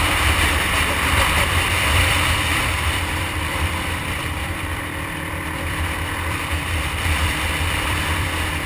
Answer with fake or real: fake